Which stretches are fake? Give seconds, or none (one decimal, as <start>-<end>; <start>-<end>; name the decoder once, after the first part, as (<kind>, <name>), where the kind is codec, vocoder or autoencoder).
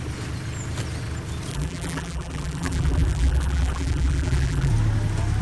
1.5-4.7 (vocoder, BigVGAN v2)